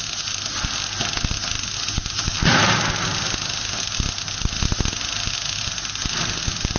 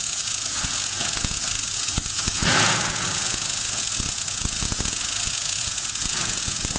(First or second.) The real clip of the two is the first